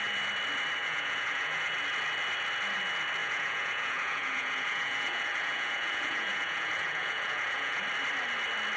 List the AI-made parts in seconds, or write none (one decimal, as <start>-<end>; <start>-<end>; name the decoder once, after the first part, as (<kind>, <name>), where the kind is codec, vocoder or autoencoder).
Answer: 0.8-1.7 (vocoder, Vocos); 3.2-7.8